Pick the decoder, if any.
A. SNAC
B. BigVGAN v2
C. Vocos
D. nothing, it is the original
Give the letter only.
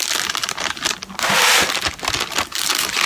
D